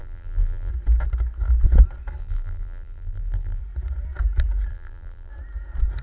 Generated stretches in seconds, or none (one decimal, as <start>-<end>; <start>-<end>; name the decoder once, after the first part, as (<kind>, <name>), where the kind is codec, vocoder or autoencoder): 0.0-0.7 (vocoder, BigVGAN v2); 2.2-3.6; 4.7-5.3